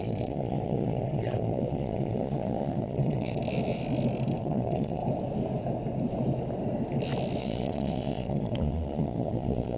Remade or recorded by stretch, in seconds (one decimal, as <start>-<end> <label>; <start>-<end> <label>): 0.0-3.4 remade; 3.4-4.4 recorded; 4.4-5.0 remade; 5.0-7.4 recorded; 7.4-9.8 remade